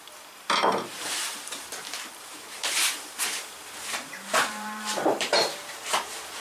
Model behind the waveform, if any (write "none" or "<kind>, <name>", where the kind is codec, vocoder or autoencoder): vocoder, BigVGAN v2